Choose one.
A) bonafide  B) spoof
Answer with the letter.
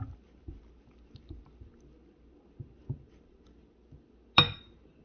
A